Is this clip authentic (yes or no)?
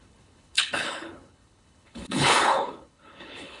no